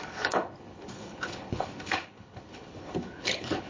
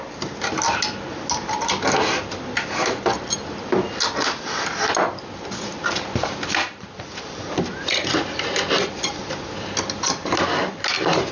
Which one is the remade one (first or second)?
first